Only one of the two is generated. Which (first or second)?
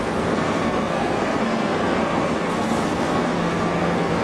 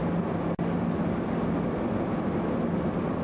first